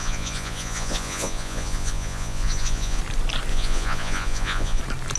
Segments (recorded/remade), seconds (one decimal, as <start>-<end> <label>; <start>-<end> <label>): 0.0-3.0 remade; 3.0-3.5 recorded; 3.5-4.8 remade; 4.8-5.2 recorded